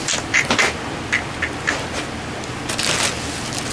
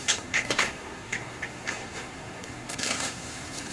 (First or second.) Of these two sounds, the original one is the first